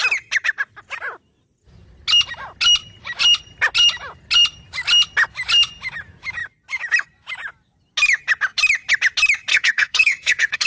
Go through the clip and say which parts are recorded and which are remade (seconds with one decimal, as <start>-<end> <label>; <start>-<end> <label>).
0.0-9.5 recorded; 9.5-10.7 remade